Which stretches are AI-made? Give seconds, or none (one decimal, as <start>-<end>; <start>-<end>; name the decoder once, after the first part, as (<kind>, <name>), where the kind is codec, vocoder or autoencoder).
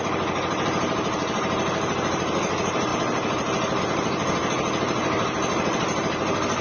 none